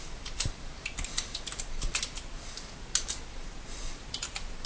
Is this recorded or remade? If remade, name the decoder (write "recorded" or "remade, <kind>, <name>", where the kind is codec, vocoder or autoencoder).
recorded